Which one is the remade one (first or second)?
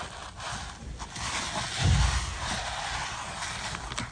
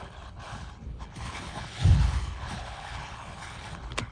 second